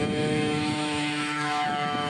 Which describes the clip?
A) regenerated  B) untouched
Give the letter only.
A